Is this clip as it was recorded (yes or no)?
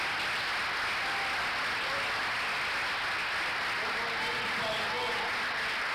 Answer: yes